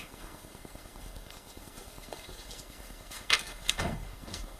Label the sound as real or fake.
fake